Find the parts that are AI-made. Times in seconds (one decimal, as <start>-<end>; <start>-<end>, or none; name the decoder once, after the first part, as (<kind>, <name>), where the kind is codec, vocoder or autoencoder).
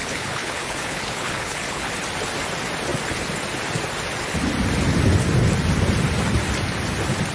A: 0.0-1.9 (codec, HILCodec)